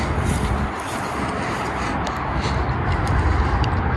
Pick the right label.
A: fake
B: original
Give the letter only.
B